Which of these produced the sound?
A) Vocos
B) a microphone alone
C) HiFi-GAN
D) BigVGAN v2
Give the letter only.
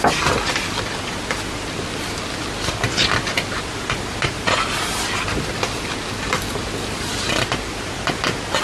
B